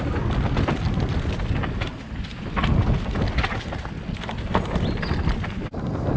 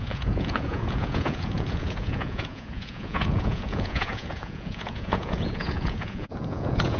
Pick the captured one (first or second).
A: first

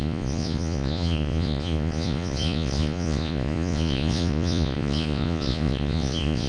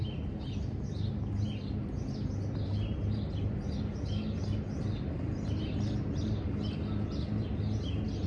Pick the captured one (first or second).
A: second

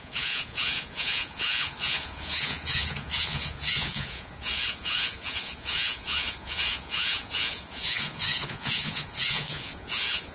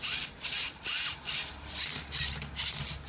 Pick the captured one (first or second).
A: second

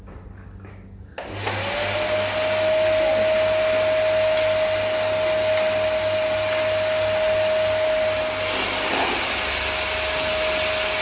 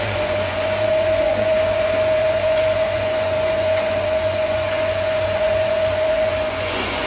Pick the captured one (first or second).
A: first